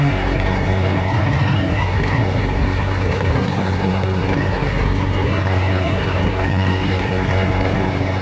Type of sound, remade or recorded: remade